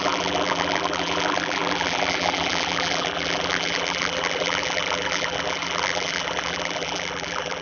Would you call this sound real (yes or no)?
no